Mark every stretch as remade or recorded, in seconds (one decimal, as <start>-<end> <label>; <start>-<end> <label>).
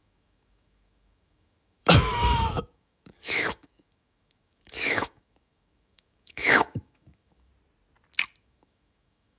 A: 0.0-7.5 remade; 7.5-8.4 recorded; 8.4-9.4 remade